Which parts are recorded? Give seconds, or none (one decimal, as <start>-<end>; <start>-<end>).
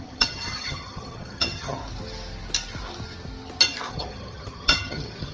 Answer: 1.8-3.9